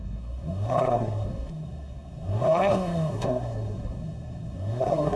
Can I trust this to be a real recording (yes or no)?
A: no